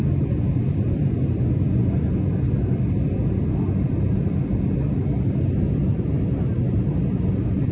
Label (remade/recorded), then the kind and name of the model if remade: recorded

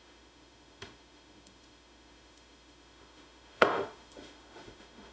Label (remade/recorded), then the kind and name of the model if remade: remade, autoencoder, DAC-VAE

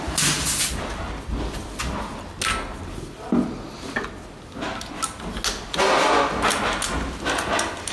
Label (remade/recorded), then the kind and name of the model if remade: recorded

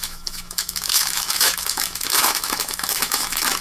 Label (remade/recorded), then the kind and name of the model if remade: remade, autoencoder, DAC-VAE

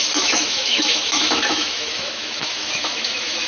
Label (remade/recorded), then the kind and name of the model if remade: remade, autoencoder, DAC-VAE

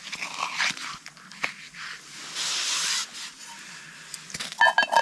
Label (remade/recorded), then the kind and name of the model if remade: recorded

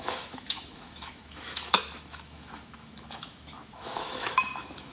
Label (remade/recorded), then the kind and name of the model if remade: remade, autoencoder, DAC-VAE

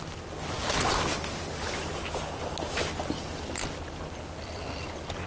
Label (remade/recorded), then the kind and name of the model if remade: recorded